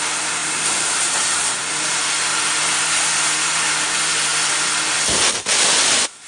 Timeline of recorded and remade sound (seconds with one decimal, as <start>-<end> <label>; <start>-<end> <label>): 0.0-0.4 recorded; 0.4-1.7 remade; 1.7-6.3 recorded